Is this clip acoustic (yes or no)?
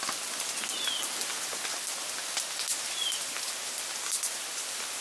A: yes